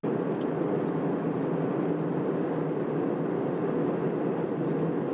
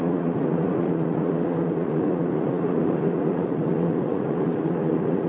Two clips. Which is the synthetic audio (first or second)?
second